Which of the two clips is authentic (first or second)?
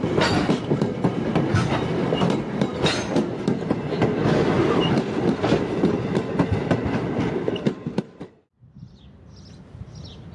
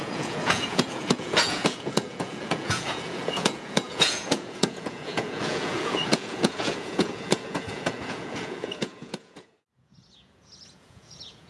first